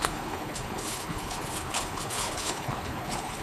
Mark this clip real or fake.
fake